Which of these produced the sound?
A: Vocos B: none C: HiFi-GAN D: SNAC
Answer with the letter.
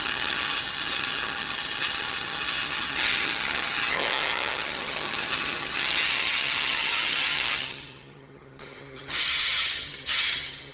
C